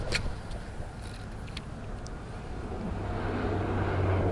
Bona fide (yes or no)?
yes